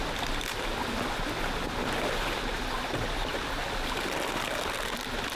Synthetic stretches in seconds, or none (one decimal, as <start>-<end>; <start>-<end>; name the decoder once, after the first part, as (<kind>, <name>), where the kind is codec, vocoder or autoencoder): none